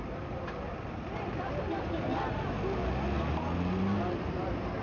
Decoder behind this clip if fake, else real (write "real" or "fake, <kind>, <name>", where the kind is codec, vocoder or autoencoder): real